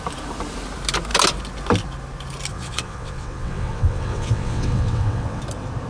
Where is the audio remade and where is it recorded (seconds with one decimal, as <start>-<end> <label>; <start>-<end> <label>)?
0.0-2.5 recorded; 2.5-5.4 remade; 5.4-5.9 recorded